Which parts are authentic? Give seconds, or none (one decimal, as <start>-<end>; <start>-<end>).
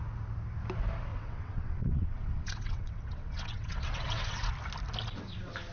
0.0-1.1; 4.5-5.7